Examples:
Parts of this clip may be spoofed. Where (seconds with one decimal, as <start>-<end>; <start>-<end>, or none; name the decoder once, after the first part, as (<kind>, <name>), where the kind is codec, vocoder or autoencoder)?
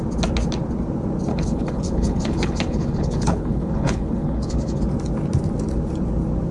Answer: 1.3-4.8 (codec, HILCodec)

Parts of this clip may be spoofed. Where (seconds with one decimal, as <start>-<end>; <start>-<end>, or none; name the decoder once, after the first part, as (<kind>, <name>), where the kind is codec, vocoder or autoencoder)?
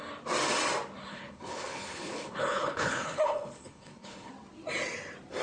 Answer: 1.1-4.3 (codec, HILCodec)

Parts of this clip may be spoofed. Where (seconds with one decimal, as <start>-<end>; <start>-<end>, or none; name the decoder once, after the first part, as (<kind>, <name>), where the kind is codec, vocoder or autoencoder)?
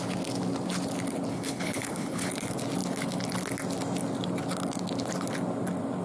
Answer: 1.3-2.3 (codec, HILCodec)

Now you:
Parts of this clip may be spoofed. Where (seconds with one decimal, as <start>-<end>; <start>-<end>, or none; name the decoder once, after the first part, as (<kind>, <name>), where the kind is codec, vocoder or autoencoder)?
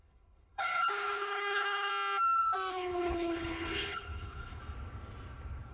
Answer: 0.0-1.9 (codec, HILCodec); 2.7-4.6